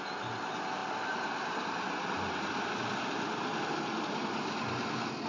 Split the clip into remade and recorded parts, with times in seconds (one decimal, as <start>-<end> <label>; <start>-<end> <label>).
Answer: 0.0-5.3 recorded